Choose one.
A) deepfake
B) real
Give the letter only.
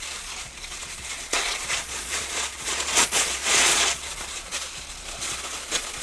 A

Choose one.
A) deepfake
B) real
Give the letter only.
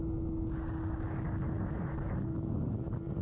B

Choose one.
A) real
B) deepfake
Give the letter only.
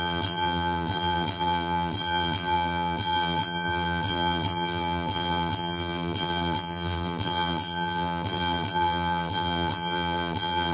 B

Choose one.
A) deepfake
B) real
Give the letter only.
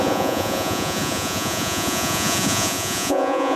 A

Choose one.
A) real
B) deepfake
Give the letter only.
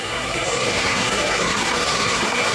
B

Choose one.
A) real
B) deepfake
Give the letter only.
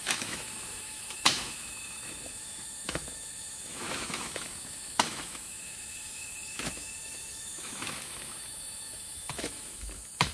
B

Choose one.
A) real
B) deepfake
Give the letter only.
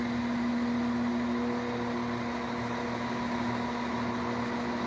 A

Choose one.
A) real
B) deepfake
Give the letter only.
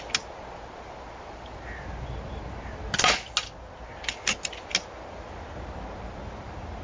A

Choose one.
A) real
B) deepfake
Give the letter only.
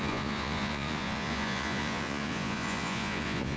B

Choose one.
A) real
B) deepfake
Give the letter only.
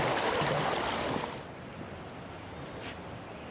A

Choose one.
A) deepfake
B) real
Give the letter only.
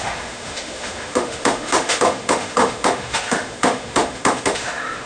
A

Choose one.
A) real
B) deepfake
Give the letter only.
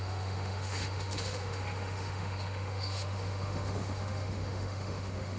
B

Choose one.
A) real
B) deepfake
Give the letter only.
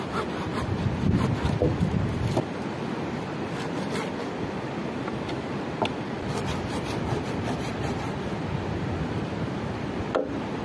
B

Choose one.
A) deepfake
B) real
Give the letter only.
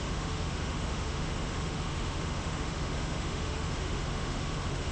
A